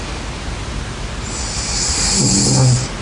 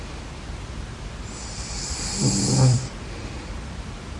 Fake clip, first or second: second